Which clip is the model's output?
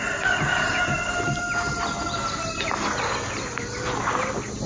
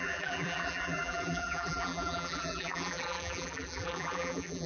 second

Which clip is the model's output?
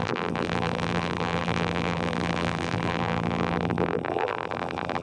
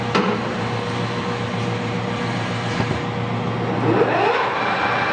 first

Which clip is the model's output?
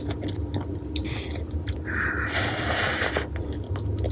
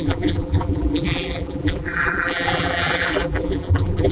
second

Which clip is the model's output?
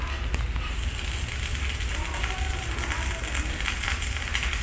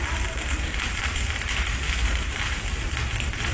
second